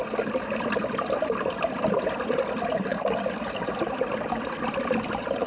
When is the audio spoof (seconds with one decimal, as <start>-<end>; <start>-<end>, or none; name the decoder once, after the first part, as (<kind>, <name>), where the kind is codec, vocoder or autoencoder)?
none